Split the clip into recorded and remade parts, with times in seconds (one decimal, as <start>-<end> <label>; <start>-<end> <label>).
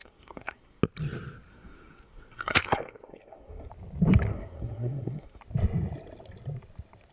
0.0-0.8 remade; 0.8-1.5 recorded; 1.5-3.7 remade; 3.7-4.3 recorded; 4.3-5.4 remade; 5.4-7.1 recorded